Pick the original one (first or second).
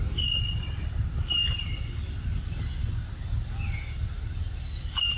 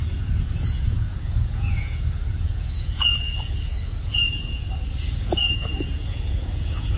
first